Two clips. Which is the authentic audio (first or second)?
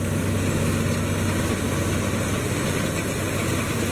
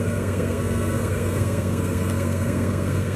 first